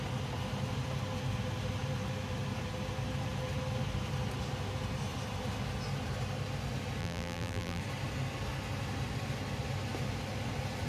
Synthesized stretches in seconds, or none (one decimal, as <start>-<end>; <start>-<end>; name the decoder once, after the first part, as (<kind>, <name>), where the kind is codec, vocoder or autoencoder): 7.0-7.8 (vocoder, BigVGAN v2)